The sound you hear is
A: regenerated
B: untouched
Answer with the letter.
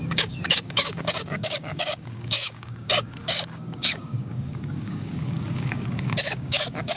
A